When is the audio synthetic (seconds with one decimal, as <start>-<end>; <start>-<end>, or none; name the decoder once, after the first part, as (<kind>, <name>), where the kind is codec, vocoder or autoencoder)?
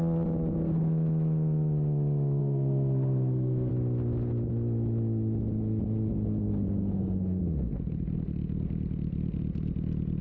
2.4-3.7 (codec, SNAC); 6.8-7.4